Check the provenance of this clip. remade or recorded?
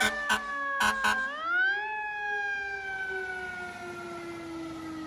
recorded